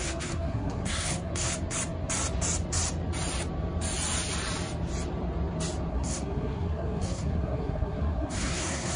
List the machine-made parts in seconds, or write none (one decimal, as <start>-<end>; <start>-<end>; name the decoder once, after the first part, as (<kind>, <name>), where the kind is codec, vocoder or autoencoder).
0.0-1.5 (codec, SNAC); 5.9-9.0